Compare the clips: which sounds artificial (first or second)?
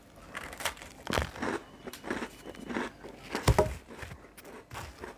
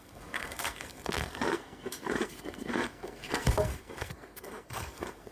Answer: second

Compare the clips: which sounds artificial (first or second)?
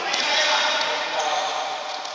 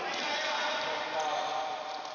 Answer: first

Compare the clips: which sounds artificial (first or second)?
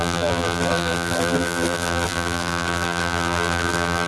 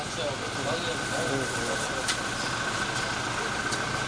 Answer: first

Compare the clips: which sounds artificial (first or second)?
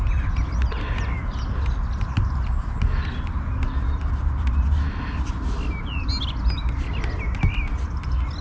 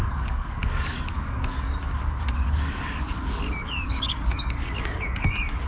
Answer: second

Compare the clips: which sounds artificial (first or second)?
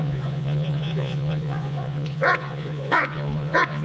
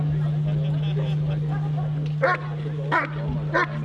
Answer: first